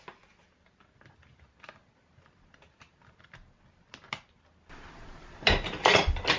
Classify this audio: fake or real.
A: real